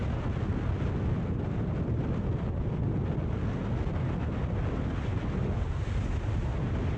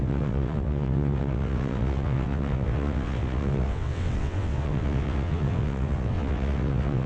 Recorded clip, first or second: first